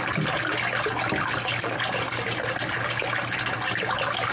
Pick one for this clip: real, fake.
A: real